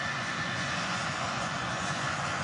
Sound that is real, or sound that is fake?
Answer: fake